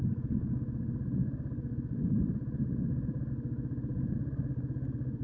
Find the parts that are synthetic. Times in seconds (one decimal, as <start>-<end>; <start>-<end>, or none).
none